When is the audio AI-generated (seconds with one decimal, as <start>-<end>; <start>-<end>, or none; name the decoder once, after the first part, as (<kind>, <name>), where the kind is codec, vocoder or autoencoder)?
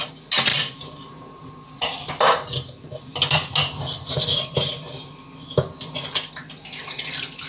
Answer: 0.5-2.1 (vocoder, BigVGAN v2)